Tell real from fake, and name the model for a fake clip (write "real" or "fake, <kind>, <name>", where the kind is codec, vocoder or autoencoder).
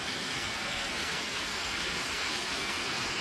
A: fake, codec, SNAC